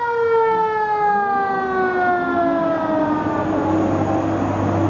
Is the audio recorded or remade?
recorded